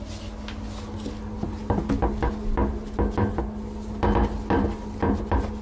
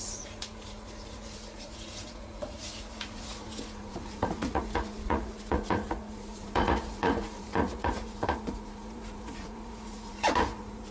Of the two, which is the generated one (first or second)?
second